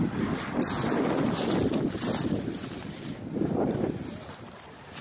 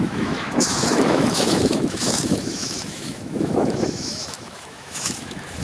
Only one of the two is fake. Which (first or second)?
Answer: second